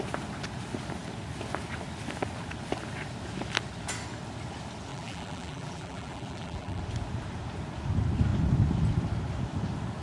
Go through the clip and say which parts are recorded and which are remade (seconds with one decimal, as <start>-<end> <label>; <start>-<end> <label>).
0.0-4.9 recorded; 4.9-6.8 remade; 6.8-10.0 recorded